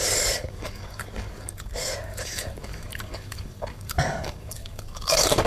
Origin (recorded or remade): remade